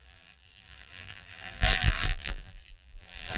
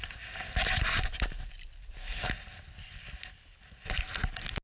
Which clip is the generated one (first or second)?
first